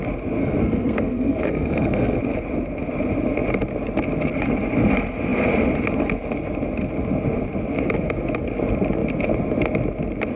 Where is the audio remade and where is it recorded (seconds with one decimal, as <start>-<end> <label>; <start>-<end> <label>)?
0.0-0.4 recorded; 0.4-2.2 remade; 2.2-10.4 recorded

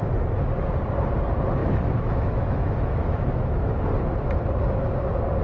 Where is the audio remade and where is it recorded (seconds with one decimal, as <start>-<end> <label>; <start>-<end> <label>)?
0.0-1.6 recorded; 1.6-3.8 remade; 3.8-5.4 recorded

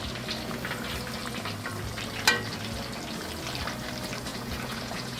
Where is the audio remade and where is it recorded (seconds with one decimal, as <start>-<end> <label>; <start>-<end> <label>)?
0.0-4.3 recorded; 4.3-5.2 remade